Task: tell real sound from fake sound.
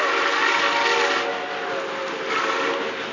real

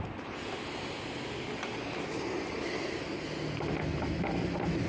real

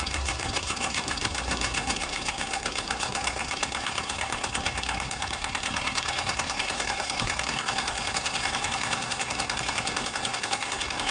fake